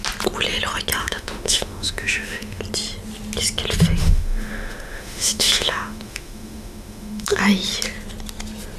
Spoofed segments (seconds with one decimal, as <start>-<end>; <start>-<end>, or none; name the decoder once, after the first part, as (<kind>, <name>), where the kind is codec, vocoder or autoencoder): 1.0-2.6 (autoencoder, DAC-VAE); 4.0-7.4

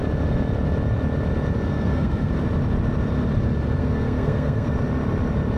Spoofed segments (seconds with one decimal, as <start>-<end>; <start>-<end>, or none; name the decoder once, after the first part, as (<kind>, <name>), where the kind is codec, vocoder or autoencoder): 1.7-2.3 (codec, SNAC); 3.8-4.7